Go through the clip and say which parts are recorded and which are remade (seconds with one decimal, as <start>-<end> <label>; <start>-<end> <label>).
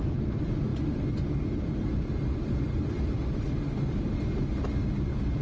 0.0-5.4 recorded